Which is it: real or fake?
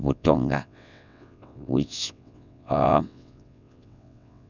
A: fake